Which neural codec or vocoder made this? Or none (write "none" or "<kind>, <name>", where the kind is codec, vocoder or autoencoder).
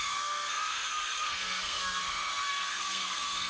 codec, SNAC